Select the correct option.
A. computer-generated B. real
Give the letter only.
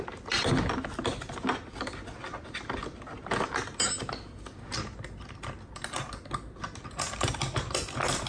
B